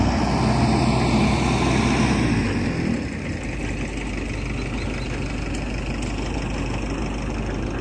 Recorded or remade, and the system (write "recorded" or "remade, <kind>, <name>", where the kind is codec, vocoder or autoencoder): recorded